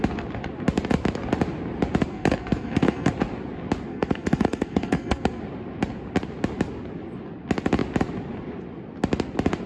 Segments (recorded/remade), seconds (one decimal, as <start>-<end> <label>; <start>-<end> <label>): 0.0-2.1 recorded; 2.1-3.1 remade; 3.1-3.9 recorded; 3.9-5.4 remade; 5.4-9.7 recorded